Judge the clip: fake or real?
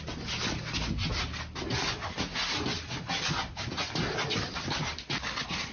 real